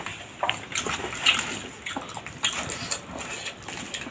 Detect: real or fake real